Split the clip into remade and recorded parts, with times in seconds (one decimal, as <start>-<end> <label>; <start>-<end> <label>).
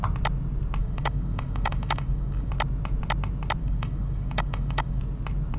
0.0-0.8 recorded; 0.8-2.5 remade; 2.5-3.6 recorded; 3.6-5.0 remade; 5.0-5.6 recorded